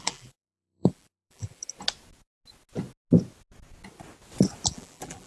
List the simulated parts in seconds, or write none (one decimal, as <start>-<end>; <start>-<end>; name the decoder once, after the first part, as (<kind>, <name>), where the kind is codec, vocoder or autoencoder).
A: 0.0-1.6 (vocoder, BigVGAN v2); 4.7-5.3